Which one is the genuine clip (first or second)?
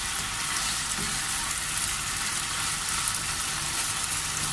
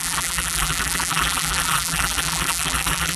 first